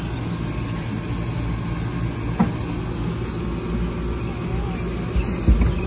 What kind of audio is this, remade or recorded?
recorded